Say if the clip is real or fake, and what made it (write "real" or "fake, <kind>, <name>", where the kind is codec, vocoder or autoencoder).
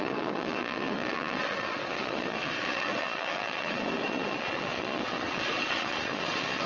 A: fake, vocoder, Vocos